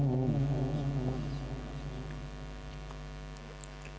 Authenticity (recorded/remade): recorded